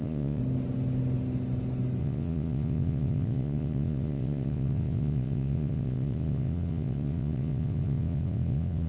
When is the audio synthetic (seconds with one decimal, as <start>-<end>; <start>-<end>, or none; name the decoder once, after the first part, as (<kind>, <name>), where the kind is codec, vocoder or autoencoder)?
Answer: 0.0-0.4 (vocoder, Vocos); 2.0-8.9